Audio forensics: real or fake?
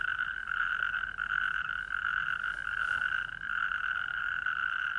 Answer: real